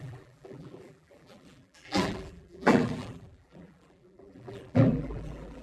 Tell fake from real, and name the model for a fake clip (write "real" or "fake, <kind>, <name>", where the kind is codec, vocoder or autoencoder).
fake, vocoder, BigVGAN v2